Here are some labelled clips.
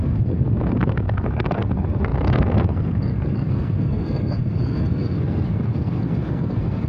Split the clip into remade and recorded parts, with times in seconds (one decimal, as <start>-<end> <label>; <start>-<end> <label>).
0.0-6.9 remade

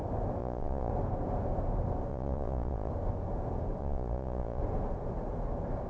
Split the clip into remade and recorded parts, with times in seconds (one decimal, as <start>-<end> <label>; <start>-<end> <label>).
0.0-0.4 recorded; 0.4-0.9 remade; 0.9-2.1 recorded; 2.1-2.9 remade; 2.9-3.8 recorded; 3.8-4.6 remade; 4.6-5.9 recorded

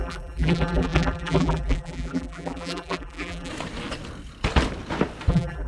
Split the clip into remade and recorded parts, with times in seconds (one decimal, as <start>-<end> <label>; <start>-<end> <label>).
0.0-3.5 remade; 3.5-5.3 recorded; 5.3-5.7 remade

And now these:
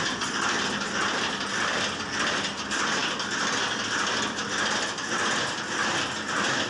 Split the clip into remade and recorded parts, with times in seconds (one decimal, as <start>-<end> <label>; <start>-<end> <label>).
0.0-6.7 recorded

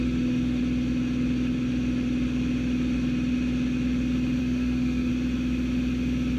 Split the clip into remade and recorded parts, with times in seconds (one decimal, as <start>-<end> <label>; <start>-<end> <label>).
0.0-0.6 remade; 0.6-4.4 recorded; 4.4-5.1 remade; 5.1-6.4 recorded

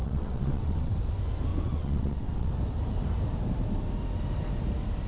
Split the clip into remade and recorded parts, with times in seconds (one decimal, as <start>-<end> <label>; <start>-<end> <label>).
0.0-0.9 remade; 0.9-1.5 recorded; 1.5-2.5 remade; 2.5-5.1 recorded